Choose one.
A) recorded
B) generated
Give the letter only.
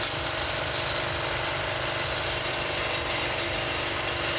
A